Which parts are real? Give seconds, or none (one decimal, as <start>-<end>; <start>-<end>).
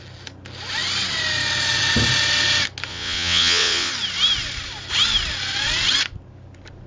0.0-2.9; 3.9-6.9